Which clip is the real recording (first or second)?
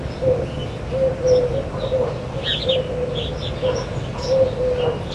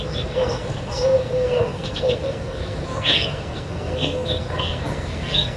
first